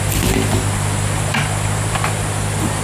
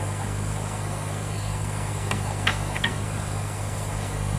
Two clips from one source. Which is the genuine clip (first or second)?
first